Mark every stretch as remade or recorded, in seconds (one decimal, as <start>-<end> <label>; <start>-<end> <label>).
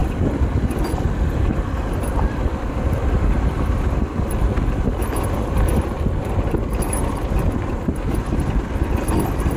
0.0-0.6 recorded; 0.6-7.0 remade; 7.0-7.6 recorded; 7.6-9.6 remade